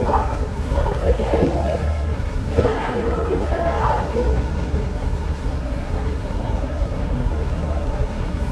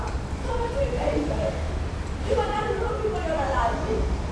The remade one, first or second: first